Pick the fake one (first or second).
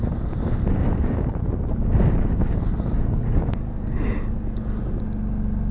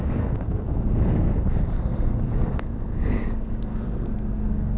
second